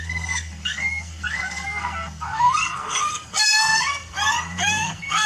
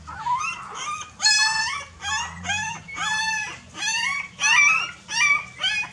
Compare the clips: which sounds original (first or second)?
second